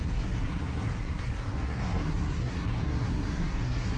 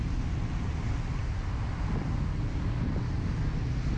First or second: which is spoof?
first